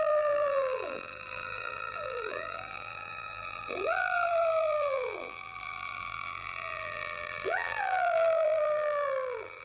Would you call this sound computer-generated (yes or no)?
yes